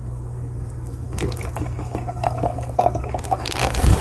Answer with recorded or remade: remade